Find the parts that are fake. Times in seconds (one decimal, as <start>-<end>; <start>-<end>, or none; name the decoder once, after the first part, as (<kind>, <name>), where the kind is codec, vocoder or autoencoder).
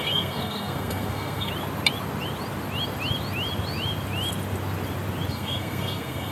0.0-1.5 (codec, SNAC); 5.3-6.3